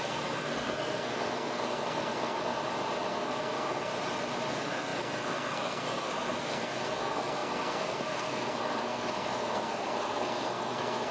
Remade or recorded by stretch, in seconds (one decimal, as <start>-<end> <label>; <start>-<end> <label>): 0.0-2.6 remade; 2.6-3.1 recorded; 3.1-3.9 remade; 3.9-4.5 recorded; 4.5-11.1 remade